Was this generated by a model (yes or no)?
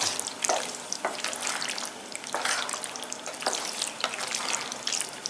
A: no